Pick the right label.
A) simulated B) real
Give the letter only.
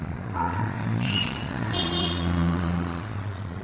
A